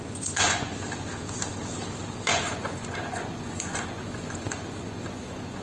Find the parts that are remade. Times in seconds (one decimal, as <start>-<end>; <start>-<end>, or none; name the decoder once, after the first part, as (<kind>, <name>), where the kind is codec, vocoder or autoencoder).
0.0-0.7 (vocoder, Vocos); 2.3-5.6